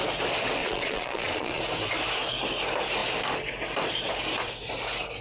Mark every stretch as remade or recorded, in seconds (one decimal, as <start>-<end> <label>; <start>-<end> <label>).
0.0-0.6 recorded; 0.6-1.6 remade; 1.6-5.2 recorded